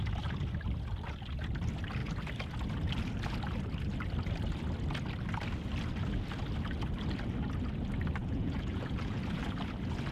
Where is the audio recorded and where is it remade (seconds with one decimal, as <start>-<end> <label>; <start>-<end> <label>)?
0.0-8.2 recorded; 8.2-9.2 remade; 9.2-10.1 recorded

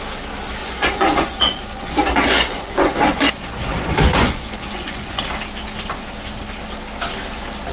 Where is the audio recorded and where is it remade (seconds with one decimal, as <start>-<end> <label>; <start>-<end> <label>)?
0.0-0.6 recorded; 0.6-5.2 remade; 5.2-7.7 recorded

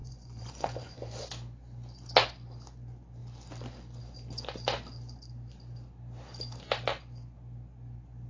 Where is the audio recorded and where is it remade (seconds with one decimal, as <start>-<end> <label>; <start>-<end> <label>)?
0.0-1.3 remade; 1.3-8.3 recorded